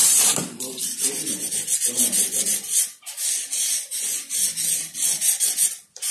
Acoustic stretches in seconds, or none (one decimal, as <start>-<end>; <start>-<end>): 0.8-6.1

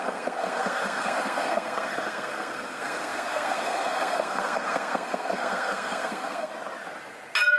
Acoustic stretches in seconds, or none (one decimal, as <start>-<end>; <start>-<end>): 6.5-7.6

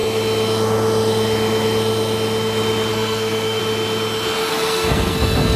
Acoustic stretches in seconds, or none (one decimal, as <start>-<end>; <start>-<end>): 0.0-2.9; 3.6-4.5

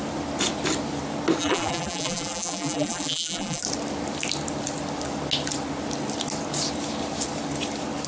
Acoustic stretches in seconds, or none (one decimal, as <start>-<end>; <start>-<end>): 0.0-1.4; 3.6-8.1

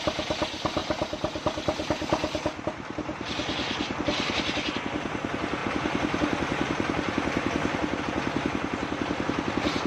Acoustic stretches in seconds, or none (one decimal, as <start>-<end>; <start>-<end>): 0.0-0.8; 4.7-5.6; 8.0-9.9